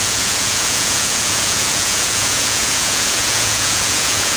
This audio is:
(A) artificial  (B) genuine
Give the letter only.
A